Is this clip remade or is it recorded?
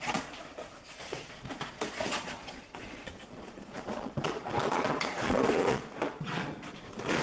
remade